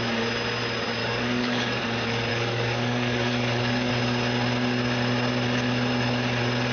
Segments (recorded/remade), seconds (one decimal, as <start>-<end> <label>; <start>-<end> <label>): 0.0-1.0 recorded; 1.0-1.8 remade; 1.8-2.3 recorded; 2.3-3.9 remade; 3.9-6.7 recorded